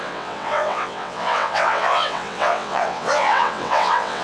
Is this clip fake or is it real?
fake